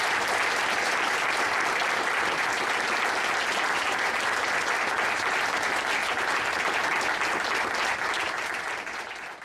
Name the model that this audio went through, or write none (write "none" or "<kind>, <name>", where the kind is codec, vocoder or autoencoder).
none